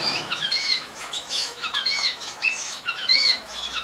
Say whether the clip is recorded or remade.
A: remade